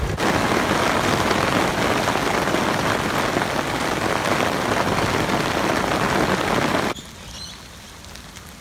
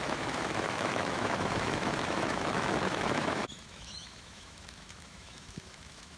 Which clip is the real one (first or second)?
first